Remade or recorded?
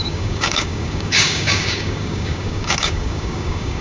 remade